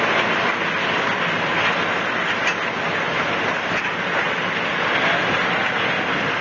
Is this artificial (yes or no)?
no